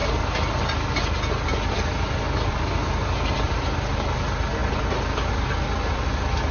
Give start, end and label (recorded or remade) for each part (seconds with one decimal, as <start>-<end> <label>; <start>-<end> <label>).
0.0-6.5 recorded